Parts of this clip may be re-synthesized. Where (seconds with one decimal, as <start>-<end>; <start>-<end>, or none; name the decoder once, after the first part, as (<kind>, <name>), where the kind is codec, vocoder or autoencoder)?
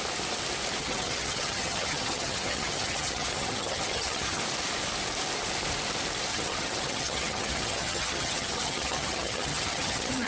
0.8-4.4 (vocoder, HiFi-GAN); 6.3-10.3